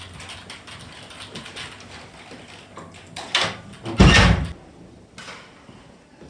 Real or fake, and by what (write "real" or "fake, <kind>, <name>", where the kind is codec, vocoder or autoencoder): real